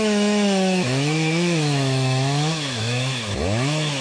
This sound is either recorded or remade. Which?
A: remade